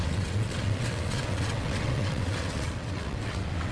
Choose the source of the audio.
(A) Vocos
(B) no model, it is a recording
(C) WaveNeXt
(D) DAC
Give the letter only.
C